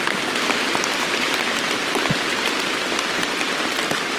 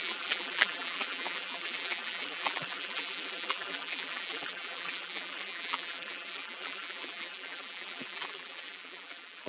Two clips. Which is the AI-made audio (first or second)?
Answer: second